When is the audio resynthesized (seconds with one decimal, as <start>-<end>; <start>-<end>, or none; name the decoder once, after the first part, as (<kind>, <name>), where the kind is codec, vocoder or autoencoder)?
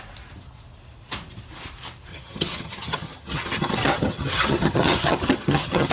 2.1-5.9 (vocoder, HiFi-GAN)